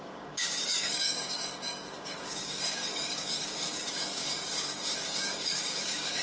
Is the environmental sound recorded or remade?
remade